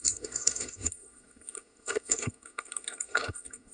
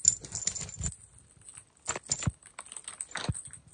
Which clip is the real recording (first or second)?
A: second